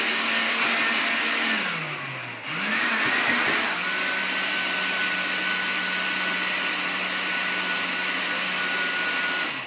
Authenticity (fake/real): real